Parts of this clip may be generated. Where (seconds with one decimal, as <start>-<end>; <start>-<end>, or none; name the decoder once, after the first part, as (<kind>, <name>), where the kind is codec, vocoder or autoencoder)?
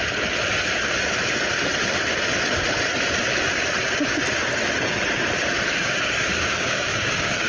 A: 5.8-7.5 (codec, DAC)